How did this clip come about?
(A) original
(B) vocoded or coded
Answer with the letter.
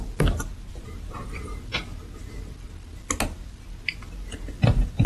A